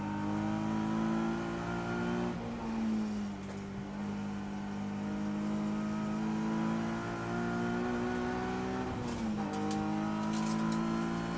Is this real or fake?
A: real